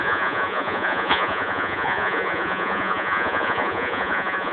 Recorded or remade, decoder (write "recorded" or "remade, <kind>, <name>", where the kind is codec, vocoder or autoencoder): remade, vocoder, Vocos